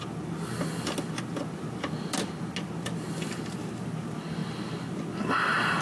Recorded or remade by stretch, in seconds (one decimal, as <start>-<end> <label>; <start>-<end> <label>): 0.0-3.1 recorded; 3.1-3.6 remade; 3.6-5.8 recorded